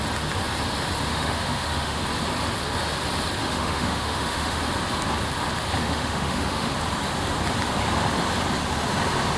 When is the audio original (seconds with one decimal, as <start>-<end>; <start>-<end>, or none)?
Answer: 0.0-1.1; 2.0-3.4; 4.6-5.8; 6.7-9.4

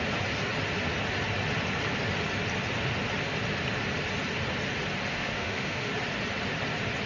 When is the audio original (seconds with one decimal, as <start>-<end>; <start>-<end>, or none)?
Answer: 0.0-5.1; 5.9-7.1

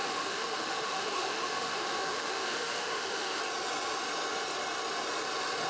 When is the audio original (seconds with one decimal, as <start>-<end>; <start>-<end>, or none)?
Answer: 3.4-5.7

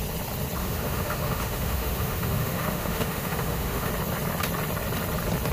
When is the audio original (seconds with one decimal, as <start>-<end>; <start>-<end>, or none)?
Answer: 0.0-0.6; 3.9-5.5

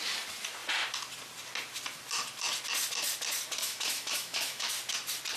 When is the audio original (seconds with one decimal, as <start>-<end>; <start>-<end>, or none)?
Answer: 0.0-3.6; 4.7-5.4

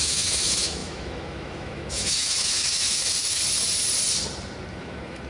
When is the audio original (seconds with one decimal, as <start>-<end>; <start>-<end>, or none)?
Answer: 3.4-4.7

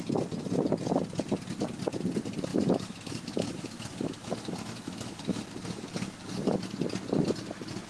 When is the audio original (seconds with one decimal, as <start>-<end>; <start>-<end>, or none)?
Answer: 0.0-2.5; 6.6-7.9

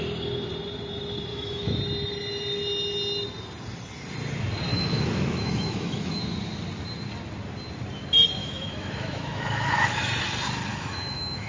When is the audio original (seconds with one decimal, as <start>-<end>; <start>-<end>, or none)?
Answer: 0.0-1.3; 1.8-4.7; 6.2-8.4; 10.0-10.7